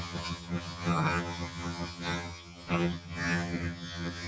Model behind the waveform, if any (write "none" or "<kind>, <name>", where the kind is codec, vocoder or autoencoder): vocoder, HiFi-GAN